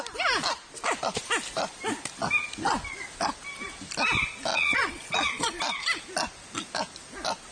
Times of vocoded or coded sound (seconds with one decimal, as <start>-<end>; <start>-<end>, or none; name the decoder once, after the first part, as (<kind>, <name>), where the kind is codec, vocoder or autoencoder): 4.5-5.6 (vocoder, Vocos)